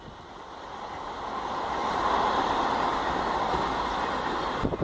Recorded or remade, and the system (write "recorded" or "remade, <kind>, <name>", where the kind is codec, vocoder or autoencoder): recorded